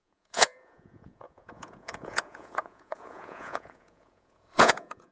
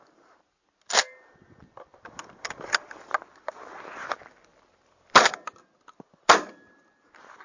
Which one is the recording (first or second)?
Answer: second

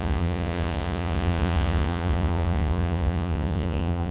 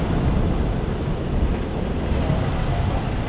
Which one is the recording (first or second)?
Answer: second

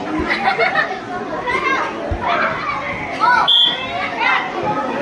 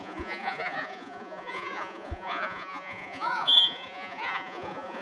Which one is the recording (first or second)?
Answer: first